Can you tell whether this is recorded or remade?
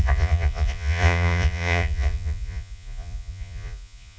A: remade